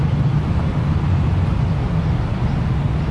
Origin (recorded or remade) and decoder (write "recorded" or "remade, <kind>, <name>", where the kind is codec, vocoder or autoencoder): recorded